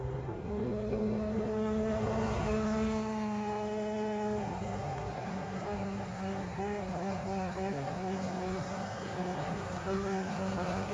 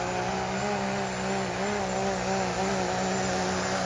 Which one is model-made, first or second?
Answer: first